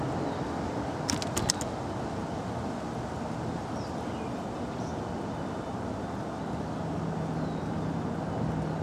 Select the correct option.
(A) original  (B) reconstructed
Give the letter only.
A